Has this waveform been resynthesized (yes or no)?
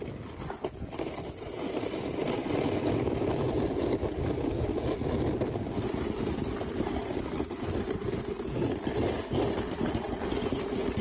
no